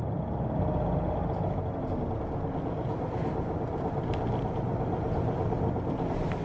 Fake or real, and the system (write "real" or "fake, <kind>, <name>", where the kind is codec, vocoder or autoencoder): real